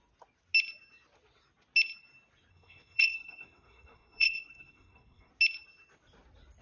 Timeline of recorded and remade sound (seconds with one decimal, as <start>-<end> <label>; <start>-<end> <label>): 0.0-2.5 recorded; 2.5-5.3 remade; 5.3-6.6 recorded

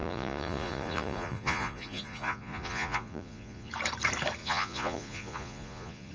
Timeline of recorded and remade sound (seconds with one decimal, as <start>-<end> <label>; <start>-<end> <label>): 0.0-3.7 remade; 3.7-4.4 recorded; 4.4-6.1 remade

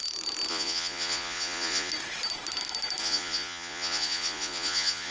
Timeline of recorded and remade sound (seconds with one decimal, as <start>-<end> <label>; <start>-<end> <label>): 0.0-0.5 recorded; 0.5-1.9 remade; 1.9-3.0 recorded; 3.0-5.1 remade